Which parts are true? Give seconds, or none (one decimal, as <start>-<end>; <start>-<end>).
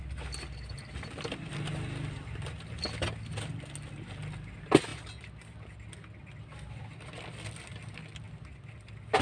0.0-9.2